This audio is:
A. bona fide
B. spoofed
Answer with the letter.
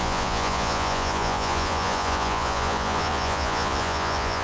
B